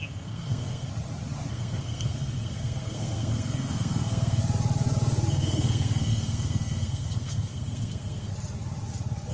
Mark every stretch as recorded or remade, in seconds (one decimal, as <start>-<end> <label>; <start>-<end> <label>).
0.0-0.9 remade; 0.9-1.5 recorded; 1.5-4.4 remade; 4.4-5.3 recorded; 5.3-8.3 remade; 8.3-9.3 recorded